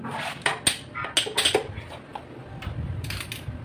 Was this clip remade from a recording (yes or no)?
no